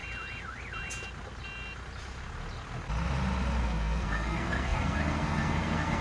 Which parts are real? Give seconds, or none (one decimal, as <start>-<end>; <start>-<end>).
0.0-3.6